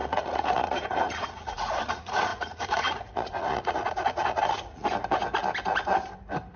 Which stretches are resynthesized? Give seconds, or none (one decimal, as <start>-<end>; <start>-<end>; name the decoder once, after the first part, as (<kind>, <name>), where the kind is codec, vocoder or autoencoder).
0.0-4.8 (vocoder, Vocos)